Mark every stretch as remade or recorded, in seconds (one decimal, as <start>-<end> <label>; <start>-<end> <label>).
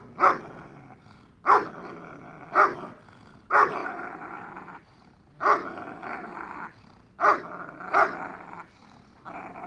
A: 0.0-3.8 recorded; 3.8-5.3 remade; 5.3-8.8 recorded; 8.8-9.7 remade